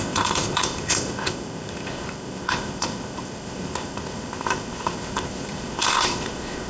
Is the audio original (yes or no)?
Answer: no